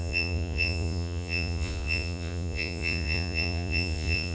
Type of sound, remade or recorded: remade